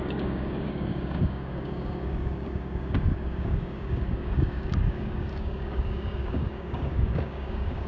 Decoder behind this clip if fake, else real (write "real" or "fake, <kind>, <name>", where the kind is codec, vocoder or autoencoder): fake, codec, DAC